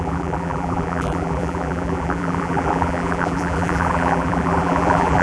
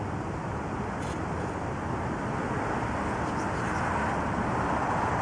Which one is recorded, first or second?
second